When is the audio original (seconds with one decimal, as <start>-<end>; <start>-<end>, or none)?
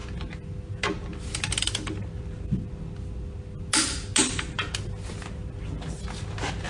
0.0-6.7